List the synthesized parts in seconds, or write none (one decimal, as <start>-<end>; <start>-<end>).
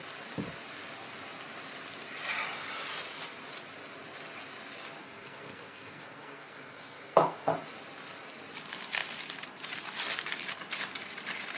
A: 5.0-7.5